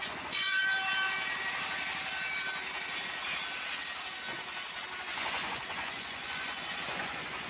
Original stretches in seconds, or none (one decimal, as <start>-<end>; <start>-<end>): 0.6-5.0